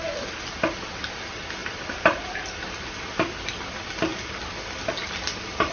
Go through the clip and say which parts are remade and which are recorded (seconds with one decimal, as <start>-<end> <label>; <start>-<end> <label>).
0.0-4.1 recorded; 4.1-5.1 remade; 5.1-5.7 recorded